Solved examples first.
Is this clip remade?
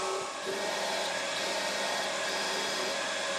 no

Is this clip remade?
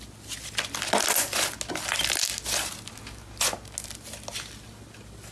no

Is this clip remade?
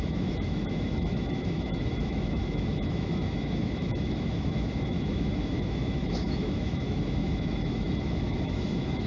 yes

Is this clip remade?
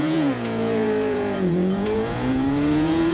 yes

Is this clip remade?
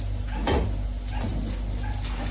no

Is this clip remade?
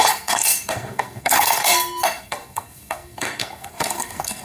yes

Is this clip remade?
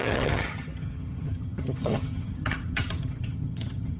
yes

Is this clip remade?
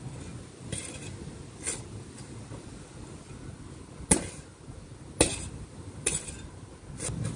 no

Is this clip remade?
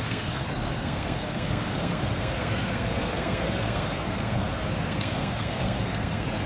yes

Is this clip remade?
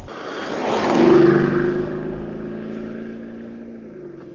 no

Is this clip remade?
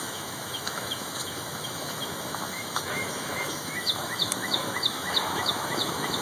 yes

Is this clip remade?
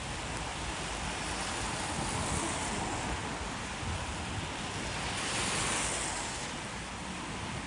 no